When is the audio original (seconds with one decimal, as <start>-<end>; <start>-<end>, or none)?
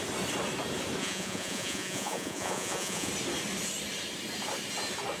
0.0-1.0; 3.1-5.2